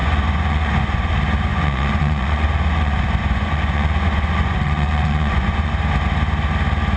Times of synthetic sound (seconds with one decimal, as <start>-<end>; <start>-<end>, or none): 0.0-1.1; 1.5-5.7